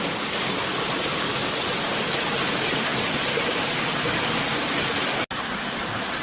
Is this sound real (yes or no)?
yes